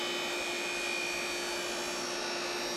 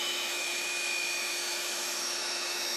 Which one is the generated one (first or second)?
second